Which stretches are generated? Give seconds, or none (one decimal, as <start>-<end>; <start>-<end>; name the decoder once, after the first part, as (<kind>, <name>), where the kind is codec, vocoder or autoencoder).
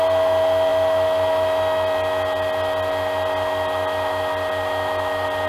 none